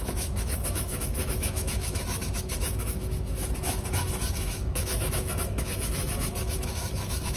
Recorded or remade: remade